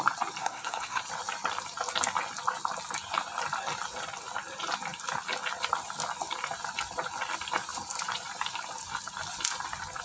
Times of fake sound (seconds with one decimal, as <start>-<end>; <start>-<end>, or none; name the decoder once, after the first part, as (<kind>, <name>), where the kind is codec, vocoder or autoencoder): 0.4-1.0 (codec, SNAC)